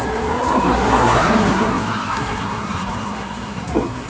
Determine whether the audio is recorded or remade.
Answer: remade